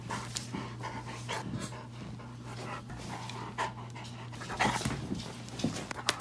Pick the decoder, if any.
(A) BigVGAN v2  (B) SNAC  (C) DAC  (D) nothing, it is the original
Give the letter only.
D